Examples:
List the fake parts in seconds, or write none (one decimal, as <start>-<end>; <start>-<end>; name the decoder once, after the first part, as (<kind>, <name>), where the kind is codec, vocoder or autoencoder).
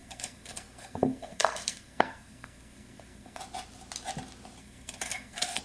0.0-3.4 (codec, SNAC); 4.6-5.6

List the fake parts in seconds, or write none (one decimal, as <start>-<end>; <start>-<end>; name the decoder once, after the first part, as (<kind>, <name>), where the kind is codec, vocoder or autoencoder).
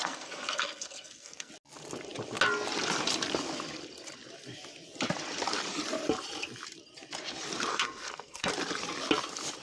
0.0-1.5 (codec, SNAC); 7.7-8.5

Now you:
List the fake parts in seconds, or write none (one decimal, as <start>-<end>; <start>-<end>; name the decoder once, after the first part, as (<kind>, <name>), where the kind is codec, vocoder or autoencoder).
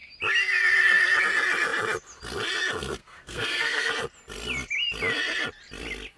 3.0-3.9 (codec, SNAC)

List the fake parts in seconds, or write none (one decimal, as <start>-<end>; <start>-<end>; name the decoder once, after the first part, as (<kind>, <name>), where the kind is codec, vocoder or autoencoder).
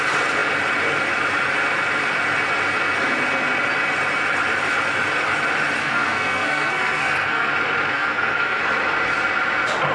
5.8-7.5 (codec, SNAC); 7.9-8.6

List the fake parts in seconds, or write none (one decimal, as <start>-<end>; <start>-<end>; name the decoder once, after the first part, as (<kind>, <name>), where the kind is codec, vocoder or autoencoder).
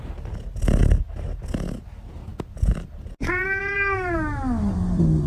none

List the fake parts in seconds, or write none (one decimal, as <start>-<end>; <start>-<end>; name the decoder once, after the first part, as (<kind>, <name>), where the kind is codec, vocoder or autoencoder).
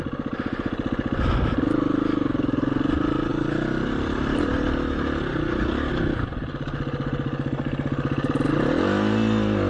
none